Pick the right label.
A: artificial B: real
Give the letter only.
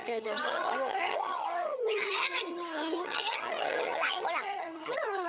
A